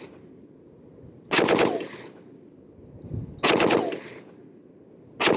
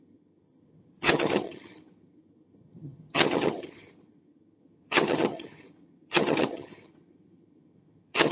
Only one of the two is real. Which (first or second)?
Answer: first